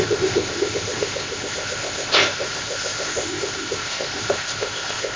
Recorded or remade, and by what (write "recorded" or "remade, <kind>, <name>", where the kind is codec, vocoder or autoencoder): remade, codec, ZipCodec